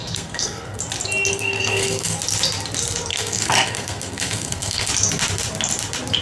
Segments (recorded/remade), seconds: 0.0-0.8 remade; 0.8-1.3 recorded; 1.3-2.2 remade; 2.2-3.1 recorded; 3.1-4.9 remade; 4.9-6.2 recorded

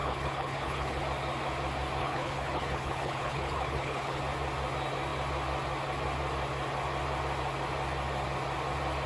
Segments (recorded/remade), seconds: 0.0-1.0 remade; 1.0-2.0 recorded; 2.0-4.2 remade; 4.2-9.1 recorded

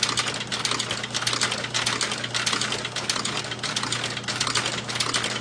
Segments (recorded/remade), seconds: 0.0-5.4 recorded

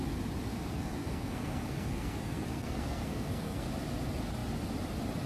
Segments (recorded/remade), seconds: 0.0-0.5 recorded; 0.5-3.7 remade; 3.7-5.3 recorded

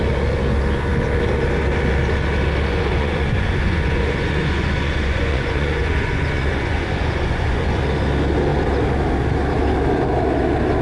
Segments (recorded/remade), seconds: 0.0-2.7 recorded; 2.7-7.8 remade; 7.8-10.8 recorded

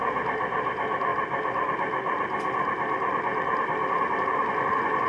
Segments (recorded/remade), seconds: 0.0-5.1 recorded

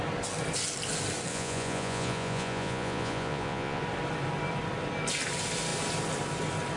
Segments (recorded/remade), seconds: 0.0-1.3 recorded; 1.3-3.8 remade; 3.8-6.8 recorded